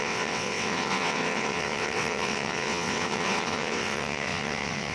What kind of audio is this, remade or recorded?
remade